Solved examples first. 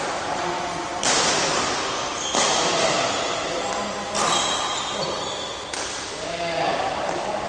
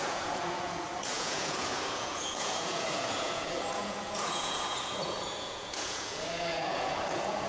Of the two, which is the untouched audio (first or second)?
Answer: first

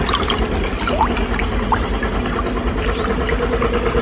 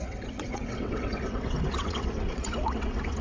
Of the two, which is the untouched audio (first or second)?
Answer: first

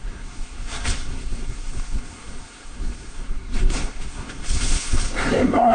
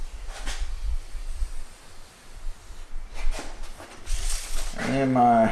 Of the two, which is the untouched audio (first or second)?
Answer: second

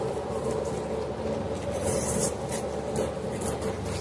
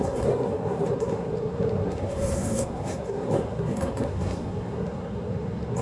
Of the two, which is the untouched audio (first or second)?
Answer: first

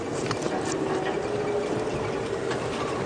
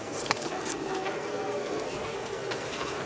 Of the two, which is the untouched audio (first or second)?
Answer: first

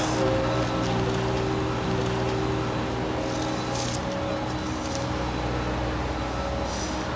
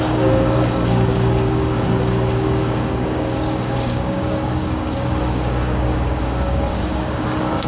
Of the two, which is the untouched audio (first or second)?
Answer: first